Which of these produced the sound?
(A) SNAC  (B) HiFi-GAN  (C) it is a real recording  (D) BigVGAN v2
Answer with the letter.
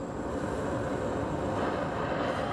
C